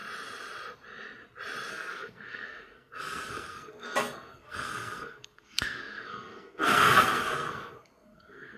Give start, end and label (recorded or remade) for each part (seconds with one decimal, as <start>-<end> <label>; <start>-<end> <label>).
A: 0.0-1.7 recorded; 1.7-8.6 remade